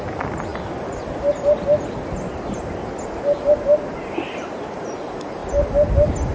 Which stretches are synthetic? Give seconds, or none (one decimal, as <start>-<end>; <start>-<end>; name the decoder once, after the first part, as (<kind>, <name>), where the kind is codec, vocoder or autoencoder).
none